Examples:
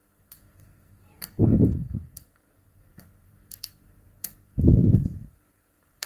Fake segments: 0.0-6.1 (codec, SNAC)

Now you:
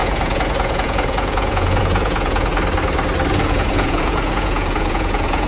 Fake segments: 0.0-2.5 (vocoder, Vocos); 3.3-5.5